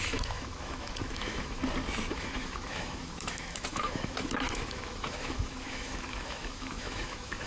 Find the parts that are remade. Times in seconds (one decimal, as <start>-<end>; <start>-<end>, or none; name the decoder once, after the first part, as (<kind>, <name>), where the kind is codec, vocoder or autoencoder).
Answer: 0.0-1.6 (autoencoder, DAC-VAE); 2.1-7.5